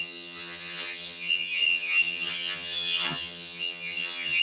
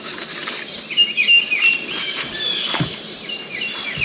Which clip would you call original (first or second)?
second